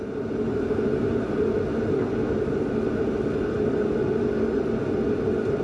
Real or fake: real